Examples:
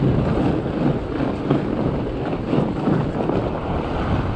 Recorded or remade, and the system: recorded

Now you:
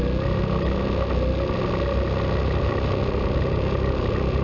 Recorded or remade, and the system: recorded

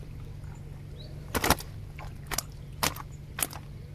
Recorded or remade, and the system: recorded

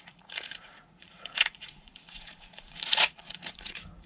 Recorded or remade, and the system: remade, vocoder, Vocos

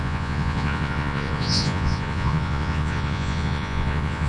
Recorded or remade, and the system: remade, vocoder, Vocos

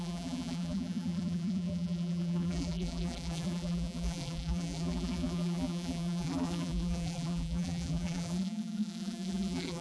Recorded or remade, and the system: remade, vocoder, BigVGAN v2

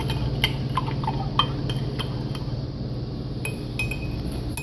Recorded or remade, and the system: recorded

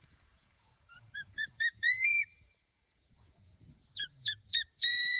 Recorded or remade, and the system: remade, vocoder, Vocos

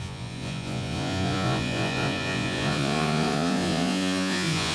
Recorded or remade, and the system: remade, vocoder, Vocos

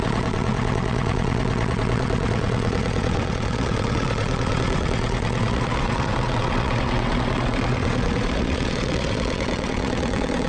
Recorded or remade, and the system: remade, vocoder, WaveNeXt